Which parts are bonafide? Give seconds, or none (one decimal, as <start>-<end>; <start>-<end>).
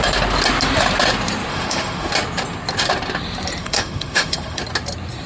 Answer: 0.0-1.5; 2.1-3.6; 4.6-5.3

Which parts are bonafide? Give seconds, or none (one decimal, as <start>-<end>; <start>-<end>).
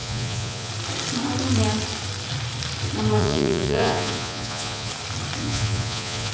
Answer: 0.7-3.2; 4.9-5.4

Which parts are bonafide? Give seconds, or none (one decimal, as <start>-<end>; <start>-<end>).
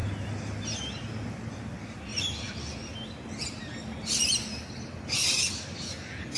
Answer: 0.0-6.4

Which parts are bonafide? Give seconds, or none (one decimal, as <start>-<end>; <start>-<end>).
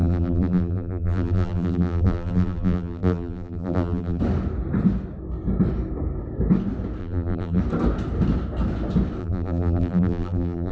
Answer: 4.2-7.0; 7.6-9.2